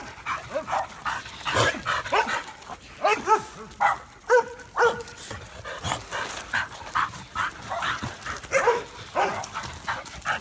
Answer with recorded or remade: recorded